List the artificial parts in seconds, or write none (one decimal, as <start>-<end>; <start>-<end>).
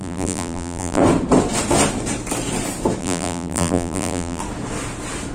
0.0-1.0; 3.0-4.4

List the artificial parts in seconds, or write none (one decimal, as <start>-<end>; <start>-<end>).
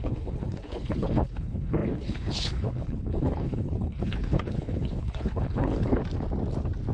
0.0-6.0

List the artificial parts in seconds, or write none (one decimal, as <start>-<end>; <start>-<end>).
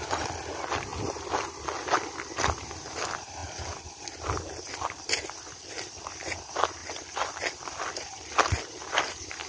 0.9-1.4; 3.4-6.1; 6.8-9.1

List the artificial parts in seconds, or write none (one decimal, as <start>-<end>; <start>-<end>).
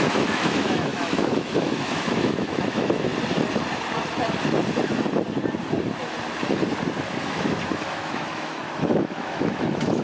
0.0-3.1; 7.2-10.0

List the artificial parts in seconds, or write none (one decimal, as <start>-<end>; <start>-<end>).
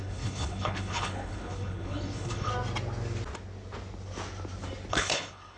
0.0-2.5; 4.9-5.6